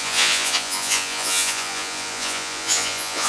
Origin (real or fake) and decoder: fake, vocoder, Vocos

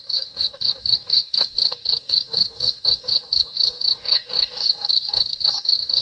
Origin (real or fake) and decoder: fake, codec, DAC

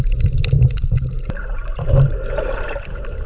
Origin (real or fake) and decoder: fake, vocoder, BigVGAN v2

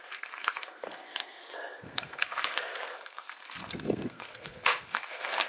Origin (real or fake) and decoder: fake, codec, SNAC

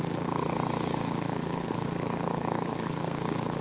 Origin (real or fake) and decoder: fake, codec, SNAC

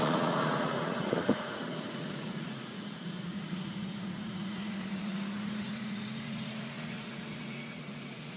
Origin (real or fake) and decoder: fake, vocoder, Vocos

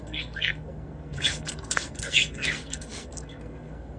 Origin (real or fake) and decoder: fake, codec, SNAC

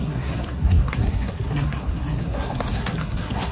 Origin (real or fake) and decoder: fake, codec, SNAC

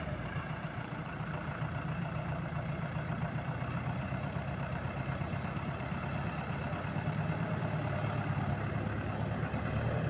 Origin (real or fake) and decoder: fake, vocoder, BigVGAN v2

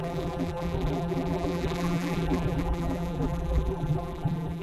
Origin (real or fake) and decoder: fake, vocoder, BigVGAN v2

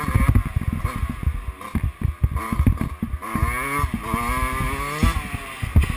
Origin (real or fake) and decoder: real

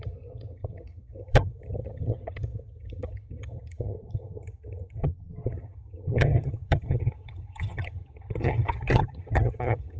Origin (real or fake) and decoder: fake, vocoder, HiFi-GAN